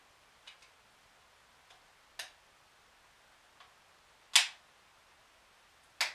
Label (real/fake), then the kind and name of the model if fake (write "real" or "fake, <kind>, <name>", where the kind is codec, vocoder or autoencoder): real